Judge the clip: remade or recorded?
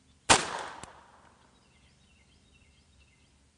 recorded